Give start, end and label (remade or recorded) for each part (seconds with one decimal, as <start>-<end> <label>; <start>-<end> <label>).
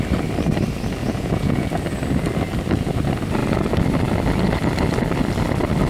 0.0-1.0 recorded; 1.0-1.7 remade; 1.7-5.9 recorded